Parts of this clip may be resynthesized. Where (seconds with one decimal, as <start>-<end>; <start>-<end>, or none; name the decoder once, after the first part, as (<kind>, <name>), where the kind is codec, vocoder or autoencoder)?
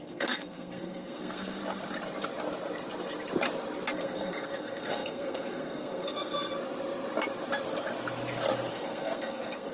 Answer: 0.0-1.6 (codec, SNAC); 3.9-6.5; 8.7-9.7